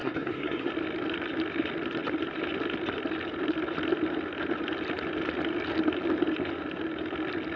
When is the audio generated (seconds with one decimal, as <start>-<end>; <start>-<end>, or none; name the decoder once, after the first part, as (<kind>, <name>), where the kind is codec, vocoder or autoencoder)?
0.0-0.7 (codec, SNAC)